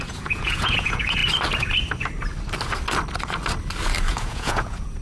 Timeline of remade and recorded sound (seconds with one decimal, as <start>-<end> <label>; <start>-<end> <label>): 0.0-1.2 remade; 1.2-4.1 recorded; 4.1-5.0 remade